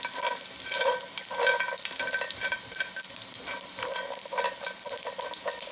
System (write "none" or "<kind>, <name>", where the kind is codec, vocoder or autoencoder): none